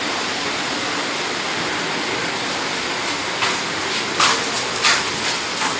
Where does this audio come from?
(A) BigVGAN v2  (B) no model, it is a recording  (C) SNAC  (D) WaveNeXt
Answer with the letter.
B